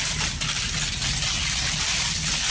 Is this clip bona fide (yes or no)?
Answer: yes